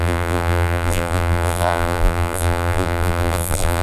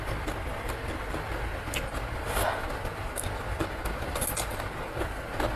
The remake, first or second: first